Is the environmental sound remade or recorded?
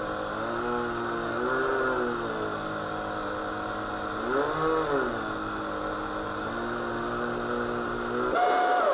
recorded